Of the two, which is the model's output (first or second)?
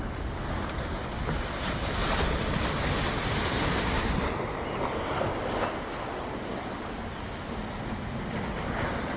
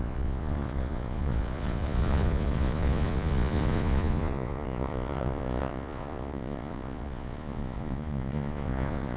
second